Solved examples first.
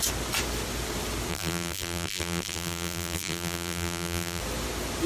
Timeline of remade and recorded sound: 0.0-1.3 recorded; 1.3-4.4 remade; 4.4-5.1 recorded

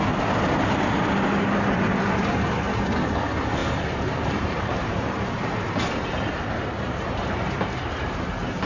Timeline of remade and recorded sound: 0.0-3.6 recorded; 3.6-8.2 remade; 8.2-8.7 recorded

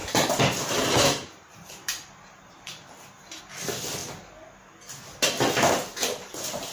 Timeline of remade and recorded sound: 0.0-3.4 remade; 3.4-6.7 recorded

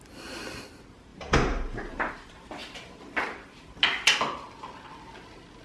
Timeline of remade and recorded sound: 0.0-1.1 recorded; 1.1-2.1 remade; 2.1-5.6 recorded